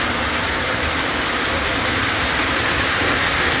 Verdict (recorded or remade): recorded